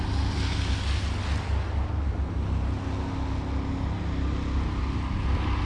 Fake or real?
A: real